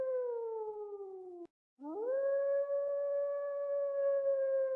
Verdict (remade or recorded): recorded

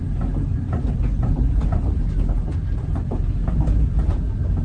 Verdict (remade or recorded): recorded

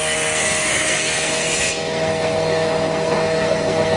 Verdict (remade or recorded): remade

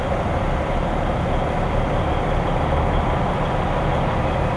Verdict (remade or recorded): recorded